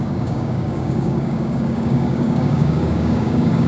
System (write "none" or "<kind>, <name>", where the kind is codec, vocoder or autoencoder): codec, DAC